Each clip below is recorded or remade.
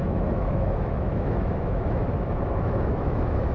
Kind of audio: remade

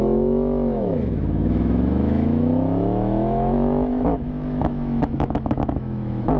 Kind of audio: remade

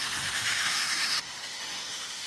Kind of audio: remade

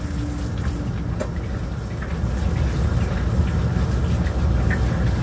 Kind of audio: recorded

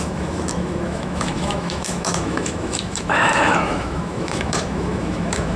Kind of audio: remade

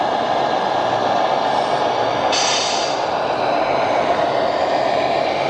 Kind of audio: recorded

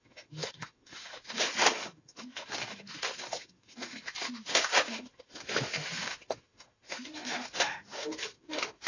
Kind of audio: remade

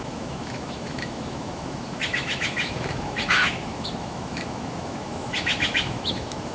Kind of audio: remade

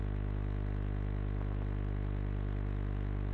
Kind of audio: recorded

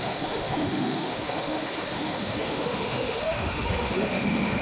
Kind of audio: remade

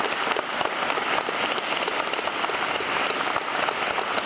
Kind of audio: recorded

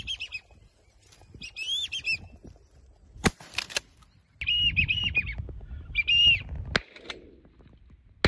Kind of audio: recorded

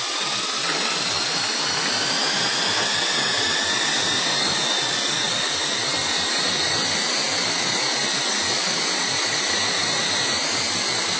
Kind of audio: recorded